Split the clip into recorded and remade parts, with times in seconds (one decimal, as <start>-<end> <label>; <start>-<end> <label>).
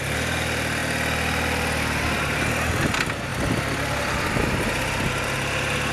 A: 0.0-5.9 recorded